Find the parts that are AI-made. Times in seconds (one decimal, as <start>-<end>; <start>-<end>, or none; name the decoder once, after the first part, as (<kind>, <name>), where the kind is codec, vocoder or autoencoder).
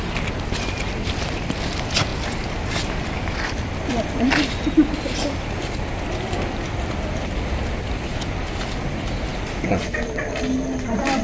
2.1-3.9 (vocoder, BigVGAN v2)